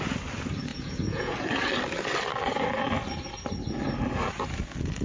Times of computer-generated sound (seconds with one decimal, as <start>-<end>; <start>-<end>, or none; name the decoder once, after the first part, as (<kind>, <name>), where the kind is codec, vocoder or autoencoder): 0.7-1.5 (vocoder, Vocos)